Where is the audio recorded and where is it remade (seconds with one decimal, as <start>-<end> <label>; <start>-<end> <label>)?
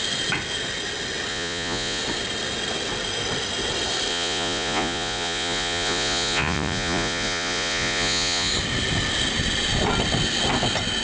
0.0-1.3 recorded; 1.3-2.0 remade; 2.0-4.1 recorded; 4.1-8.5 remade; 8.5-11.0 recorded